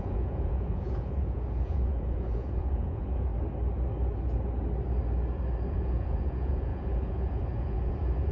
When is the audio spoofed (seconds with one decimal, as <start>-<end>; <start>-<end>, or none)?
0.0-3.3; 5.7-8.3